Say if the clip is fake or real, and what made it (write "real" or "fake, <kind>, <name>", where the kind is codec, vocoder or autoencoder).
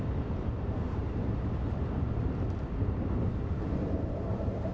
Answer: real